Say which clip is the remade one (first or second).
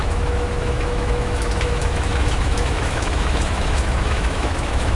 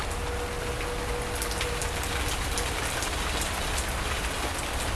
first